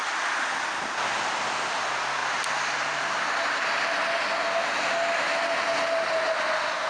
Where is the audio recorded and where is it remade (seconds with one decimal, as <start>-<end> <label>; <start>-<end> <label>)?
0.0-6.9 recorded